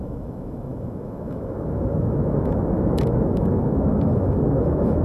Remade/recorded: remade